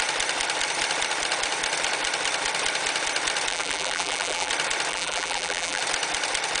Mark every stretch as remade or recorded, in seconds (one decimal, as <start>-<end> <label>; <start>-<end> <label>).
0.0-3.5 recorded; 3.5-4.5 remade; 4.5-4.9 recorded; 4.9-5.8 remade; 5.8-6.6 recorded